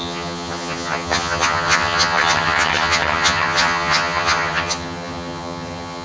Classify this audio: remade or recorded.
remade